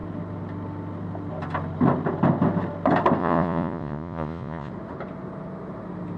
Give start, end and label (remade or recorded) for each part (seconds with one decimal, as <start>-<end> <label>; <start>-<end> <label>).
0.0-3.2 recorded; 3.2-4.7 remade; 4.7-6.2 recorded